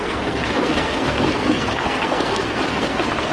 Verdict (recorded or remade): remade